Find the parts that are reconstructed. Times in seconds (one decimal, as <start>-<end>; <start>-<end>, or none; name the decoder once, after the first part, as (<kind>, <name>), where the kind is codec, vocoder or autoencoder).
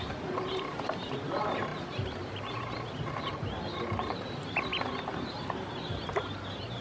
0.0-6.8 (vocoder, BigVGAN v2)